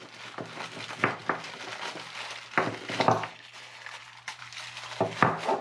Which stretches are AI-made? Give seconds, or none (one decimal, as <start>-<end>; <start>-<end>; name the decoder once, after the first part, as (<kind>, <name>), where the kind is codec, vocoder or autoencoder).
3.3-4.0 (codec, HILCodec)